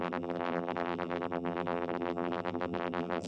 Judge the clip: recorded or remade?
remade